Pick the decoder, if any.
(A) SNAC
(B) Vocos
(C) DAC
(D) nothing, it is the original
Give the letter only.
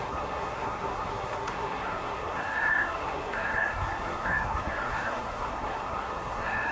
A